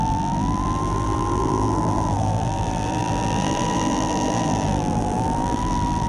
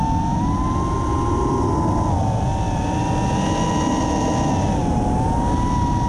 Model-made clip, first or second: first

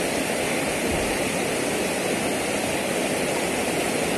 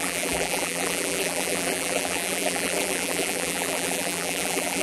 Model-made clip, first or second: second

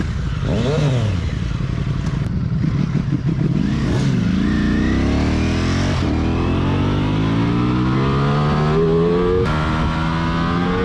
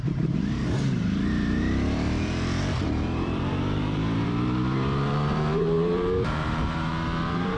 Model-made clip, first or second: second